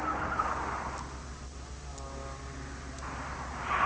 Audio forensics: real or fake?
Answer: real